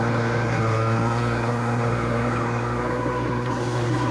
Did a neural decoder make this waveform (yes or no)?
yes